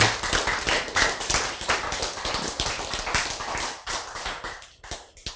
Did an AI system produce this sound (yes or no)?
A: no